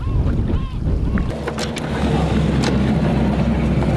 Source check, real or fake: real